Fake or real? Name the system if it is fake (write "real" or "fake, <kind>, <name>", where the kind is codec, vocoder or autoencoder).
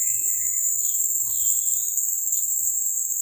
fake, codec, SNAC